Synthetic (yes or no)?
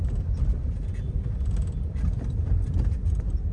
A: no